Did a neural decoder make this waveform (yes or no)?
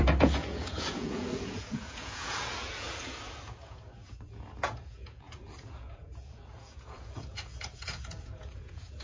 yes